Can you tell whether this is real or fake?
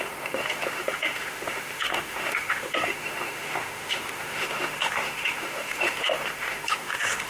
fake